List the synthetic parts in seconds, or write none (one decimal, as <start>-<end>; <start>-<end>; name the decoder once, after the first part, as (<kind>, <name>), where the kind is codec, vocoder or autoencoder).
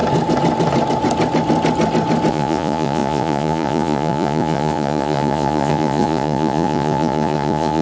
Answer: 2.3-7.8 (vocoder, Vocos)